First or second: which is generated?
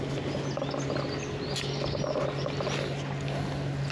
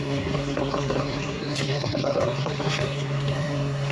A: second